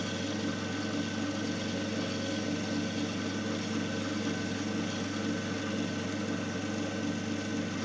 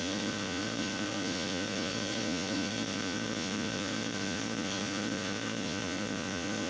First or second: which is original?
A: first